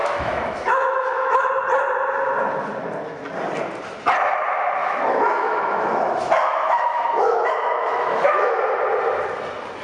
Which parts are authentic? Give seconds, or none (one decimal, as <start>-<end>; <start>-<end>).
1.5-4.8; 8.6-9.8